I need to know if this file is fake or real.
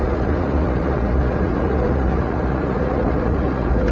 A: fake